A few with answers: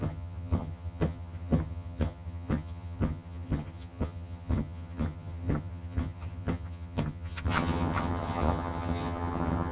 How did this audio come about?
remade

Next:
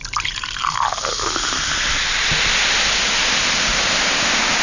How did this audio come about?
recorded